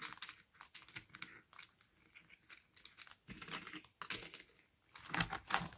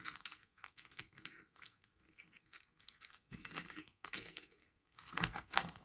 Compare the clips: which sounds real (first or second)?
first